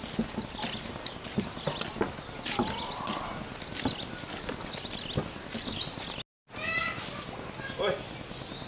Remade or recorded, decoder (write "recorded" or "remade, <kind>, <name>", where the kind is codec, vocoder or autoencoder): recorded